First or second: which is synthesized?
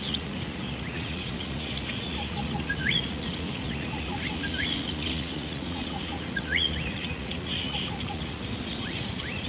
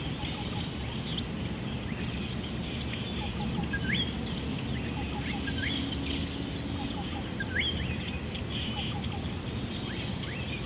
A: first